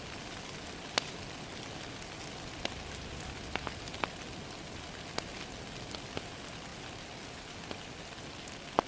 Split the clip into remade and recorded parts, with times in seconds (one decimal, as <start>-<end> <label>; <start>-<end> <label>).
0.0-8.9 recorded